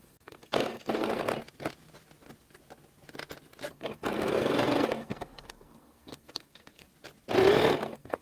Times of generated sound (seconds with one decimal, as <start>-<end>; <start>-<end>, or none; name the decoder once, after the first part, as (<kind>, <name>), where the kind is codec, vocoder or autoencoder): 0.0-1.3 (codec, SNAC); 3.7-6.9; 7.7-8.2